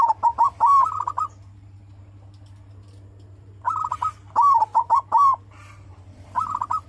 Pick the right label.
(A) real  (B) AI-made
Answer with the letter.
B